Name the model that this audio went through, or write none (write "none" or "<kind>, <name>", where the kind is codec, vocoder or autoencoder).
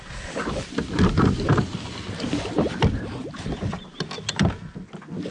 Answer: none